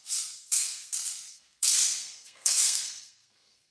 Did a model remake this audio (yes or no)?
yes